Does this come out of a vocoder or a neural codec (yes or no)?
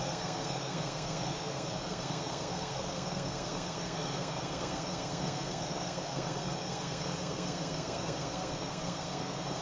yes